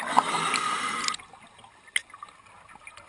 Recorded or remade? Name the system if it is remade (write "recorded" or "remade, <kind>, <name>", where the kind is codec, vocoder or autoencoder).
recorded